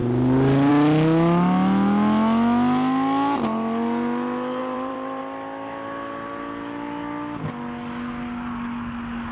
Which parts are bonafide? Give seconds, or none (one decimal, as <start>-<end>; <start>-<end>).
0.0-4.6; 5.2-9.3